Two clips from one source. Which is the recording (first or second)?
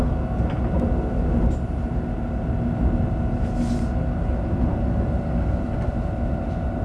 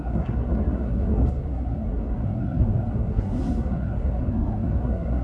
first